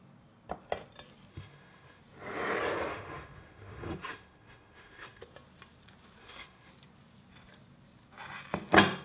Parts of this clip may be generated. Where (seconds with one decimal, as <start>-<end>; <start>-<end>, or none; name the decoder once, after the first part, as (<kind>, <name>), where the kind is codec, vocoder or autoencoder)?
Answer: 1.3-2.0 (autoencoder, DAC-VAE); 2.9-5.2; 6.2-6.7